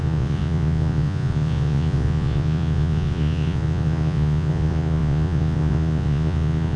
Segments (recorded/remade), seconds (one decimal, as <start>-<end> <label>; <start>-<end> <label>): 0.0-6.8 remade